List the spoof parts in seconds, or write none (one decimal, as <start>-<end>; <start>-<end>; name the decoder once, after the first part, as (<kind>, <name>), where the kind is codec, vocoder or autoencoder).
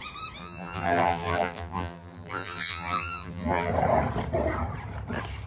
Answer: 0.4-3.7 (vocoder, BigVGAN v2)